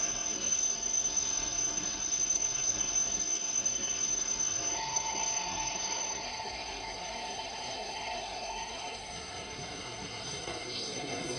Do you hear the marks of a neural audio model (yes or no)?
yes